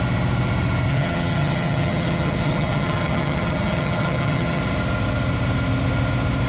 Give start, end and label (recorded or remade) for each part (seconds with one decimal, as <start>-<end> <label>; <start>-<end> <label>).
0.0-0.9 recorded; 0.9-4.6 remade; 4.6-6.5 recorded